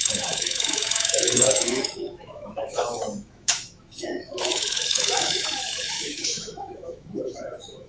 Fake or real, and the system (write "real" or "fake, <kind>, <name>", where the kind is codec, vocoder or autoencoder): fake, autoencoder, DAC-VAE